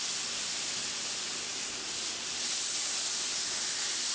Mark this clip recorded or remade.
recorded